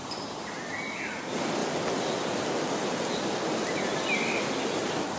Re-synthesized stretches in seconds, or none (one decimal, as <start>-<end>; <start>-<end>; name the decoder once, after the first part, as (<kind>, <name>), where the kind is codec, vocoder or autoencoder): none